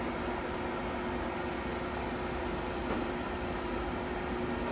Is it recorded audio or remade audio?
recorded